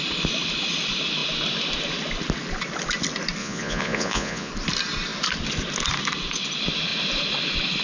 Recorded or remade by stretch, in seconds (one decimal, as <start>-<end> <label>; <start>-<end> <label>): 0.0-3.4 recorded; 3.4-4.5 remade; 4.5-7.8 recorded